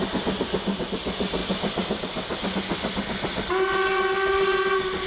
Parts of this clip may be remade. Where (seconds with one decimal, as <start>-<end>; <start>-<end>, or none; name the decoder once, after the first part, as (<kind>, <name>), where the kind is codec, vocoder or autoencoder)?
none